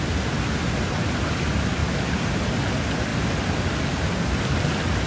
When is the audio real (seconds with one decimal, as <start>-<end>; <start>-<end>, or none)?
0.0-1.8; 2.4-3.1; 3.8-5.1